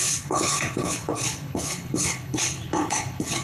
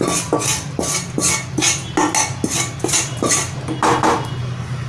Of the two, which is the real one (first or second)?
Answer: second